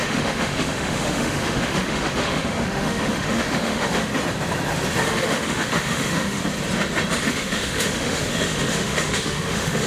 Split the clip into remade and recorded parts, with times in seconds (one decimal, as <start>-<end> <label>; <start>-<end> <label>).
0.0-4.1 remade; 4.1-5.0 recorded; 5.0-6.4 remade; 6.4-7.3 recorded; 7.3-9.9 remade